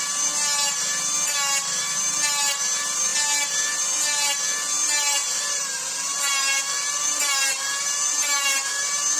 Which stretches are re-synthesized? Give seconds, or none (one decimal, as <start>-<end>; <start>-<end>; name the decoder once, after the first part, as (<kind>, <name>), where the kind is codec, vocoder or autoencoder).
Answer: 5.2-8.7 (vocoder, BigVGAN v2)

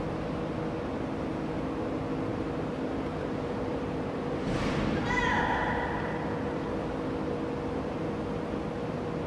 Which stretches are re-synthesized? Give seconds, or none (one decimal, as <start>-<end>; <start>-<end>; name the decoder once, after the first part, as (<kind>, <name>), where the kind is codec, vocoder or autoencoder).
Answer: 2.3-4.2 (vocoder, BigVGAN v2)

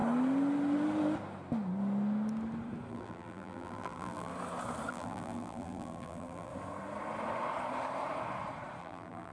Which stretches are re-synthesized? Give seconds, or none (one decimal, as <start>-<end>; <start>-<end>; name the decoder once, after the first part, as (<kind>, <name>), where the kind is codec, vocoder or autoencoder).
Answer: 2.9-4.3 (vocoder, BigVGAN v2); 4.9-6.5; 8.8-9.3

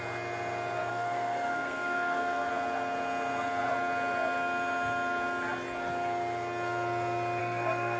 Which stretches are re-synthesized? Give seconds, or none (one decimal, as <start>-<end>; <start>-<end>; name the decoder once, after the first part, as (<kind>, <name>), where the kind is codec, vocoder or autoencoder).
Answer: 0.9-2.5 (codec, SNAC); 7.4-8.0

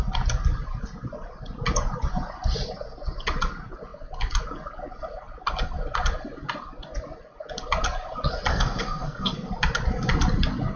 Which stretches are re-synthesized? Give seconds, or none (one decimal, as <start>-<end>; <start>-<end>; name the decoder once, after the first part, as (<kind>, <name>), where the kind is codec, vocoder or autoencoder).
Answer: 8.5-9.5 (codec, SNAC)

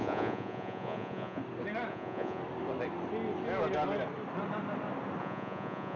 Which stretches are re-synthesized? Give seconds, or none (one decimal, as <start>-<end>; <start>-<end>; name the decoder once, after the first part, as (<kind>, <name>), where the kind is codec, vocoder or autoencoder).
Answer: 0.0-1.4 (vocoder, Vocos); 1.9-2.4; 5.2-6.0

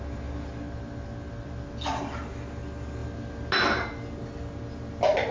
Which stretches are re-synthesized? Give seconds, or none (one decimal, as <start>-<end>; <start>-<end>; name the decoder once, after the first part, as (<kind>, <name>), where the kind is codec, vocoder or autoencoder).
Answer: none